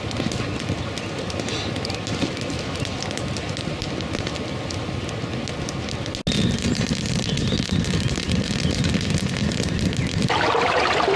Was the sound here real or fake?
real